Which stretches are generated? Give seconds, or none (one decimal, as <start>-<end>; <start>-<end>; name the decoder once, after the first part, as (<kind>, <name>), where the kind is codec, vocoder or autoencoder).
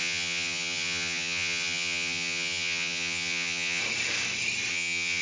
0.0-3.8 (vocoder, HiFi-GAN); 4.7-5.2